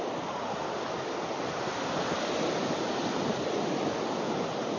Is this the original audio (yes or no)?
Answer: yes